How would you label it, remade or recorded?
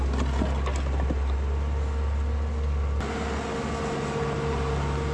recorded